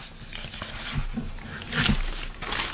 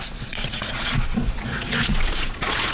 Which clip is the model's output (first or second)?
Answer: second